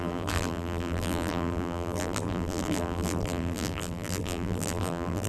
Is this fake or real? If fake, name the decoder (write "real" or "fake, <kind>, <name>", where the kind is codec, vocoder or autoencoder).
fake, vocoder, BigVGAN v2